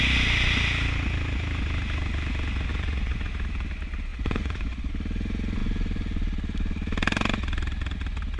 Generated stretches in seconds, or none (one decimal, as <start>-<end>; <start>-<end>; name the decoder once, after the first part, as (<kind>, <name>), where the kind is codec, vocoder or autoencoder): 2.7-3.3 (vocoder, Vocos); 4.1-4.9